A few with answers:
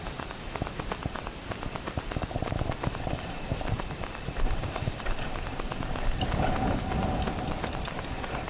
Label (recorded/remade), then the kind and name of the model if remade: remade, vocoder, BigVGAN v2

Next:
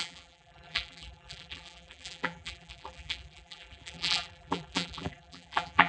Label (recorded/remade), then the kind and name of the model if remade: remade, vocoder, BigVGAN v2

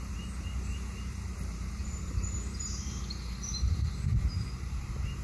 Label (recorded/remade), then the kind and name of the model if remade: remade, vocoder, BigVGAN v2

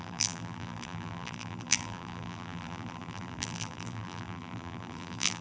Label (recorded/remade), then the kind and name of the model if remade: remade, vocoder, BigVGAN v2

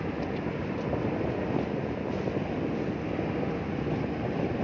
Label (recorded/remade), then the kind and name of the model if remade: recorded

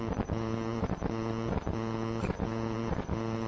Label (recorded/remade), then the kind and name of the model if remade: remade, vocoder, BigVGAN v2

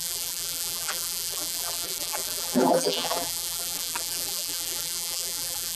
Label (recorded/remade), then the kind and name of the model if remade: remade, vocoder, BigVGAN v2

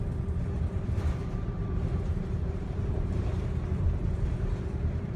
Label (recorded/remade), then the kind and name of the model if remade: remade, vocoder, BigVGAN v2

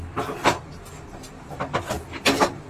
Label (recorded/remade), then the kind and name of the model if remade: recorded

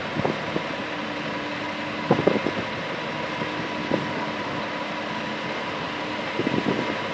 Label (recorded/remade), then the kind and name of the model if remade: recorded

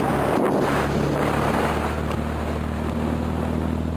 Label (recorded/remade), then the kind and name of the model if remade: recorded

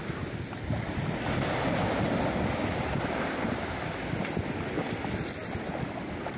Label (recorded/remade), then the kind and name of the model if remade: recorded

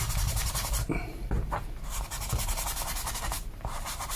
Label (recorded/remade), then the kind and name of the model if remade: remade, vocoder, BigVGAN v2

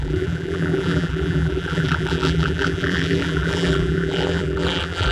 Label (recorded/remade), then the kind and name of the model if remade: remade, vocoder, BigVGAN v2